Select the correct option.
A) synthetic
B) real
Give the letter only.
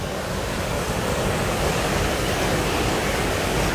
A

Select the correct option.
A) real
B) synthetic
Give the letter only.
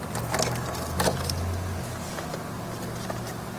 A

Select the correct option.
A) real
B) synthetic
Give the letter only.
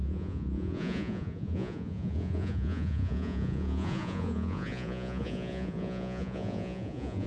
B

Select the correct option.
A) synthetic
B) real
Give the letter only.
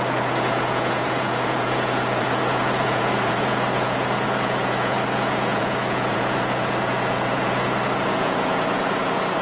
A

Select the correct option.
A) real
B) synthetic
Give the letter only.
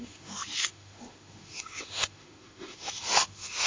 B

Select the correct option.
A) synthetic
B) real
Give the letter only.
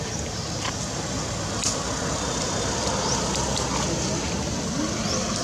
B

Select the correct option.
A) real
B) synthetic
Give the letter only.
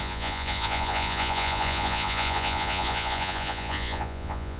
B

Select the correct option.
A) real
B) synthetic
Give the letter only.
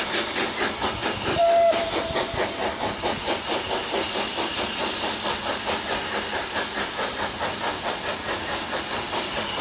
A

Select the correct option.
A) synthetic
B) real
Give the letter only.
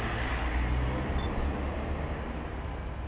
B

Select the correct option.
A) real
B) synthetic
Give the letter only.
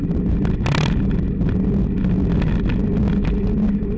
A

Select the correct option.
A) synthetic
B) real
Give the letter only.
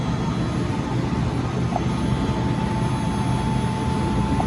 B